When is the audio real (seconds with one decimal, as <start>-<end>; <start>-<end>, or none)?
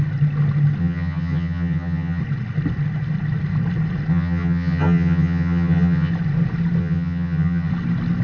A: 0.0-0.8; 2.2-4.1; 6.1-6.8; 7.7-8.2